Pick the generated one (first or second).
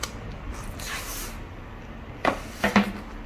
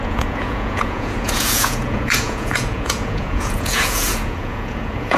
second